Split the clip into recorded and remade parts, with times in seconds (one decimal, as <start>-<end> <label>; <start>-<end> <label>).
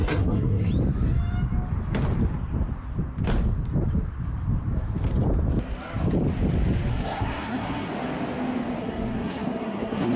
0.0-0.7 remade; 0.7-6.9 recorded; 6.9-7.9 remade; 7.9-8.8 recorded; 8.8-10.2 remade